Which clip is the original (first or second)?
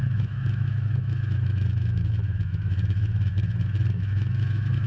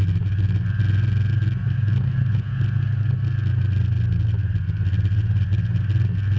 second